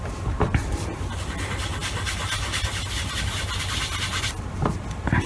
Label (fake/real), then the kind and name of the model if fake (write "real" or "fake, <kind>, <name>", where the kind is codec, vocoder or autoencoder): real